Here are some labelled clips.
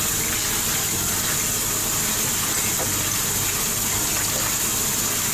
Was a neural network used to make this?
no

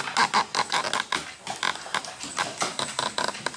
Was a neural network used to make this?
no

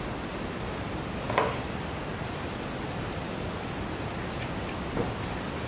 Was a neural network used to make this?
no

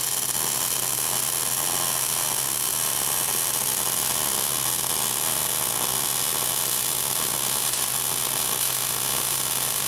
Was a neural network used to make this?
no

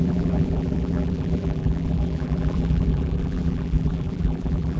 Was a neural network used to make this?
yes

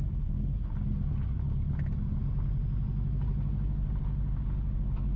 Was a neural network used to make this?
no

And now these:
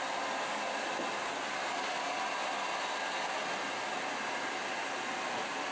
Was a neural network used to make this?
no